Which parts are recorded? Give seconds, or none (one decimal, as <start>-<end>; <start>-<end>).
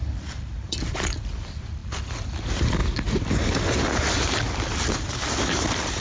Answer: 2.8-4.9